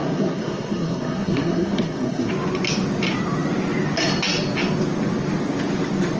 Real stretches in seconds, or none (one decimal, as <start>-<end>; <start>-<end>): 2.3-6.2